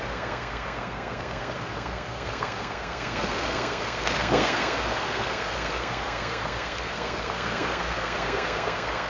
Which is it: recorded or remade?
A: remade